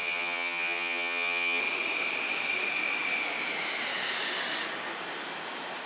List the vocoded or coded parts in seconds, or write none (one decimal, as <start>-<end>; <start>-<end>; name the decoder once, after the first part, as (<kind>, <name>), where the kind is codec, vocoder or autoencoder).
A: 0.0-1.6 (vocoder, HiFi-GAN)